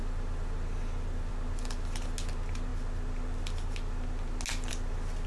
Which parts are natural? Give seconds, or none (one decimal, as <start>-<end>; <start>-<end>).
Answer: 0.0-5.3